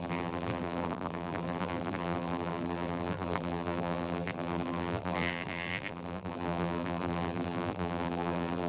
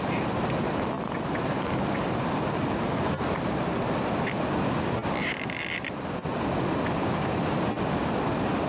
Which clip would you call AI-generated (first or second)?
first